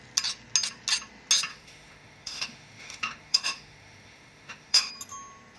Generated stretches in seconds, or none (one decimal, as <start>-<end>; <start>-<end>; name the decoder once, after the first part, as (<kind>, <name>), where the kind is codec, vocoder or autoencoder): 1.5-4.9 (autoencoder, DAC-VAE)